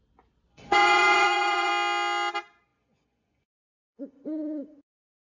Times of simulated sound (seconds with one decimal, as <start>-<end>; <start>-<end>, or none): 0.5-1.7; 2.7-4.8